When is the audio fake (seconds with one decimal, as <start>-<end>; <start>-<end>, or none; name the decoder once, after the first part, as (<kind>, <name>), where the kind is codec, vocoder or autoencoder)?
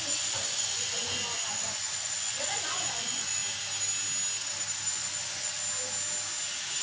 0.0-3.4 (vocoder, Vocos); 4.9-5.6